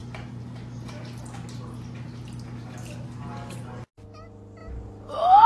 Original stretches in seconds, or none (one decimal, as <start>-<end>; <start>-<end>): 0.0-5.5